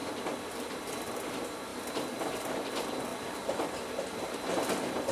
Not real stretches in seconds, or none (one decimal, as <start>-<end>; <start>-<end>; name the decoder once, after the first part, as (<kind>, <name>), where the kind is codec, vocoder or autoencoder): 0.0-0.9 (vocoder, BigVGAN v2); 1.7-2.3; 3.1-3.8